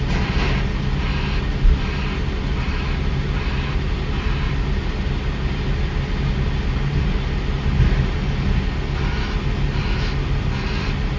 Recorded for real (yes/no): yes